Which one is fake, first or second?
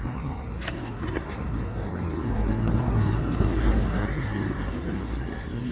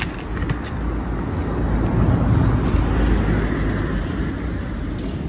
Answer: first